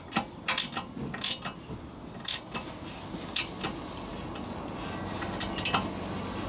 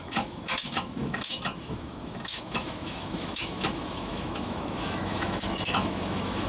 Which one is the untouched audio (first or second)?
first